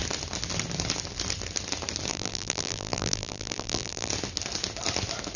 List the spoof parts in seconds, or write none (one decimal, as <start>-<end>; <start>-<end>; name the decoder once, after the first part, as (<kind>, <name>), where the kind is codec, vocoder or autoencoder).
2.1-4.1 (vocoder, BigVGAN v2)